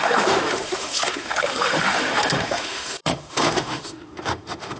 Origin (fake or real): fake